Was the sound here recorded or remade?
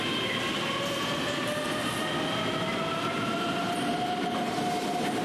recorded